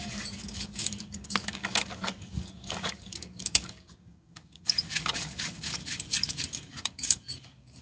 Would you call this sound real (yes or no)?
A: no